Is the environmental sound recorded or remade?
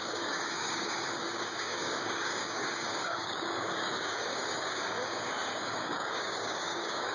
remade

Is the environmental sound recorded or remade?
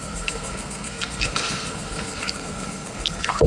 remade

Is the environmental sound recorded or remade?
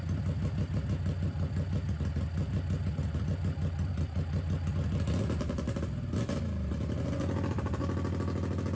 recorded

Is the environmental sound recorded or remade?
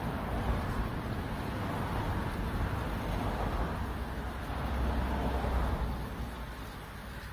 recorded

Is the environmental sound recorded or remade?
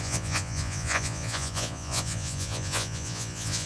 remade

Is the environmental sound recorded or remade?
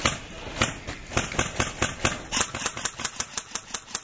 recorded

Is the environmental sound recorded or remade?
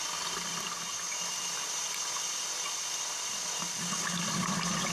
recorded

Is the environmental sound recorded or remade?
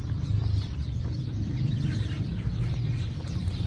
remade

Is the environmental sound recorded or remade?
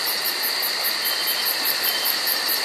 recorded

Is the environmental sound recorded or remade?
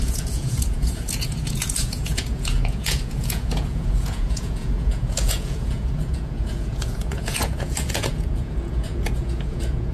remade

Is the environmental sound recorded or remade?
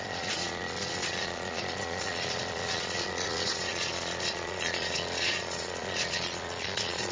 remade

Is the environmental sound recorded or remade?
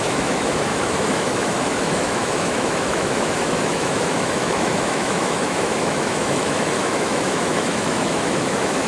remade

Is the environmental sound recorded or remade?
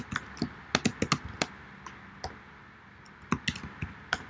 recorded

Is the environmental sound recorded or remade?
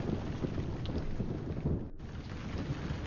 recorded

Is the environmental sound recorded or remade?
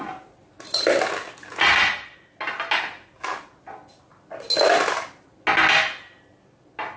recorded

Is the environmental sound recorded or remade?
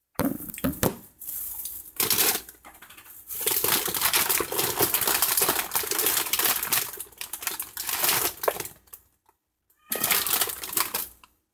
remade